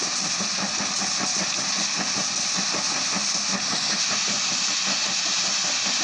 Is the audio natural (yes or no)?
yes